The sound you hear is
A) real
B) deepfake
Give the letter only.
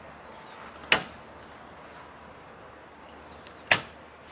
A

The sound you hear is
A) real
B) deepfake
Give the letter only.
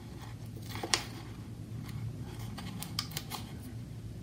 A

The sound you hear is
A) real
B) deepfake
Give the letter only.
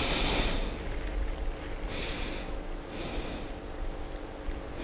A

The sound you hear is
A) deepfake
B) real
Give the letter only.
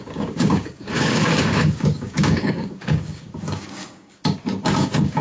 A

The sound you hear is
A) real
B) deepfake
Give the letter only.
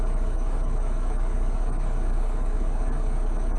B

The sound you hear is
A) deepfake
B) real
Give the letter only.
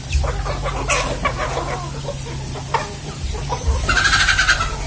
B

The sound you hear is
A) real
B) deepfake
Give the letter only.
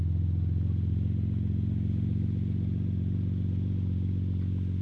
A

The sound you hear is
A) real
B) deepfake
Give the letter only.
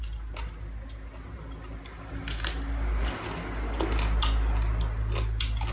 A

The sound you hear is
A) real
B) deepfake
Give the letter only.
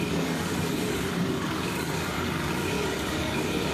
B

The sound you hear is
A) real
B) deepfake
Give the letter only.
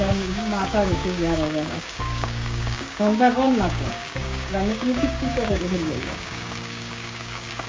B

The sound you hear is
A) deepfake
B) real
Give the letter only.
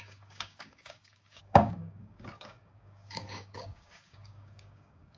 A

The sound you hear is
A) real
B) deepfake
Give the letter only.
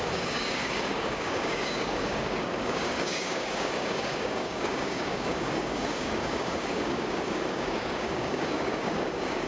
B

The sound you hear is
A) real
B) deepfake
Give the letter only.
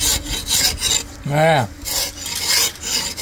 A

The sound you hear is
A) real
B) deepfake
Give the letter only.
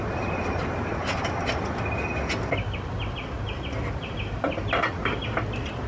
A